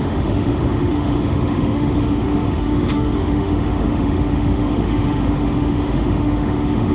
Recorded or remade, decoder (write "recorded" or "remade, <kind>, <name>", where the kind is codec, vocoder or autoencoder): remade, autoencoder, DAC-VAE